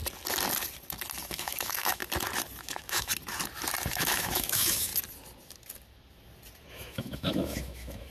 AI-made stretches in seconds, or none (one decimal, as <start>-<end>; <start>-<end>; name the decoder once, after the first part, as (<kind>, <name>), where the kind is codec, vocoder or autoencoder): 1.3-2.0 (autoencoder, DAC-VAE); 2.6-3.1; 4.0-4.9; 6.7-8.1